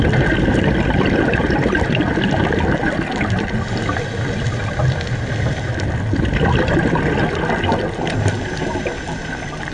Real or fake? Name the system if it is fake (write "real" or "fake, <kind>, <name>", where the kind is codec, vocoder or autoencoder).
real